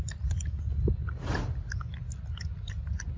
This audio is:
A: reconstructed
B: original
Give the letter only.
B